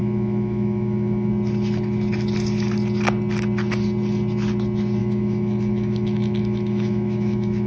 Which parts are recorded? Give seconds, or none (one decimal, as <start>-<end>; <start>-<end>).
1.3-5.0